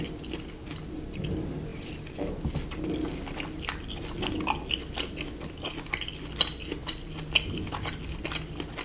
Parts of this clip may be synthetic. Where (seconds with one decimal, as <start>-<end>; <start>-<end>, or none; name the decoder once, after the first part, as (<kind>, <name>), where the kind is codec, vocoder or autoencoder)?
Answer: none